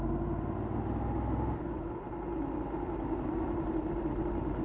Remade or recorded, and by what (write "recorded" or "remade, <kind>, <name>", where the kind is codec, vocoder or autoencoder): recorded